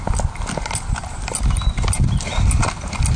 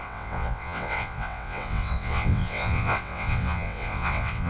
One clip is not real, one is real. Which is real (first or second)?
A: first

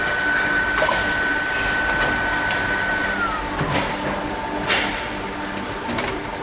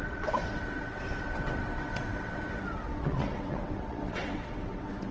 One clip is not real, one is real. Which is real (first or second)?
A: first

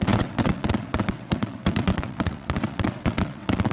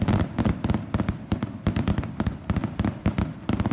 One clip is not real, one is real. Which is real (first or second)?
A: second